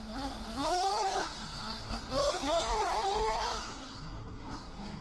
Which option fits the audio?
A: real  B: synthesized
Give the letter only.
B